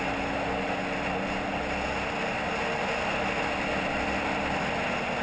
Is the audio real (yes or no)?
yes